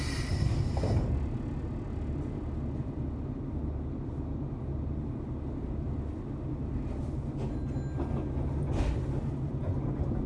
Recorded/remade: recorded